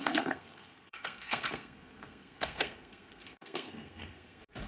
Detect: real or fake fake